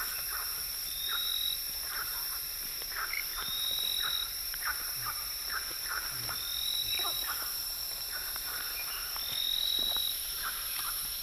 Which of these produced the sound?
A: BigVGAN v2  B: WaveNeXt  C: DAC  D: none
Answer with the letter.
A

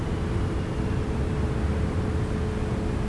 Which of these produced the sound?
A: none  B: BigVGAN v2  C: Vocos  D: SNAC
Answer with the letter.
A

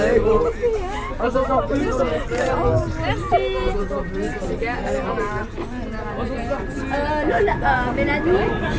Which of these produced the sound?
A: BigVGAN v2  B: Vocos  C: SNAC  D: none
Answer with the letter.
D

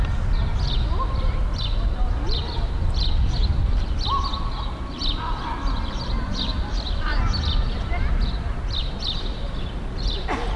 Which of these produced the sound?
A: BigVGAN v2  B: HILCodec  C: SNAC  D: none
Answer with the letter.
D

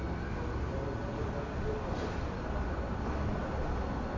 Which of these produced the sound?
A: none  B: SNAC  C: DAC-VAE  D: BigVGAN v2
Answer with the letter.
A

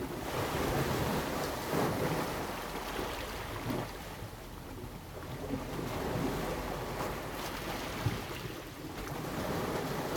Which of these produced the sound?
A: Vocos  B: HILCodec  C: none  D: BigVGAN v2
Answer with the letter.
C